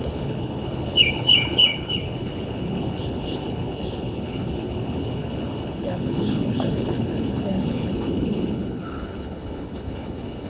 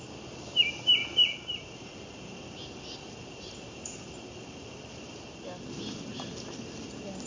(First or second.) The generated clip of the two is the first